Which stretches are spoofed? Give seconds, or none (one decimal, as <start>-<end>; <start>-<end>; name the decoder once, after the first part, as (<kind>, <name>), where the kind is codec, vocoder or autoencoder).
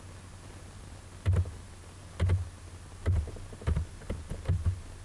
none